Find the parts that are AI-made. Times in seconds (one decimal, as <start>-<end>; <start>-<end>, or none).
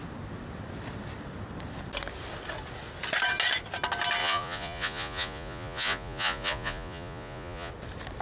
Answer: 4.2-7.7